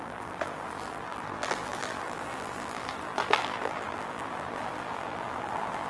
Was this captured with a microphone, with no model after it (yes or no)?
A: no